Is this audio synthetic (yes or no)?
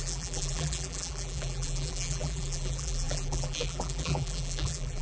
yes